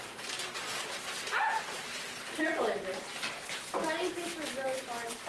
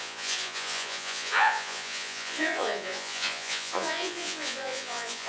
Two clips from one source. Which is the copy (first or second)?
second